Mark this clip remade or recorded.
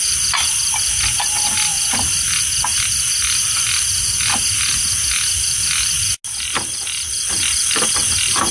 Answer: recorded